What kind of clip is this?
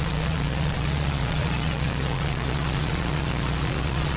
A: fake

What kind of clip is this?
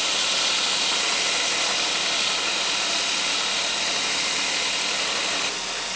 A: real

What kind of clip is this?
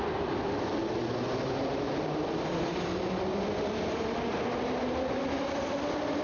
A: real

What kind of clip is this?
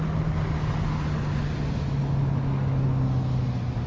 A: real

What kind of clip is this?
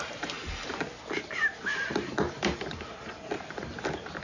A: real